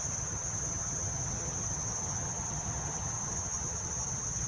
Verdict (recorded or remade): remade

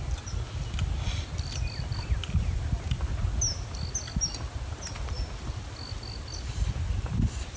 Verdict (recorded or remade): recorded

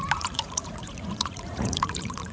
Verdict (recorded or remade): remade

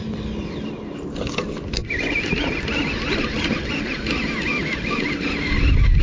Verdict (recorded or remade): recorded